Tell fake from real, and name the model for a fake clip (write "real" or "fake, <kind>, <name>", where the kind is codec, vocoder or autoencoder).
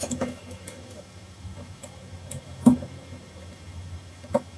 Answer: fake, autoencoder, DAC-VAE